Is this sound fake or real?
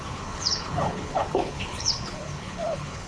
fake